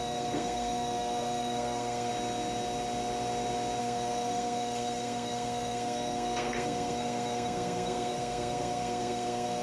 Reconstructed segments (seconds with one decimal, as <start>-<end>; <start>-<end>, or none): 0.0-2.1; 3.8-9.6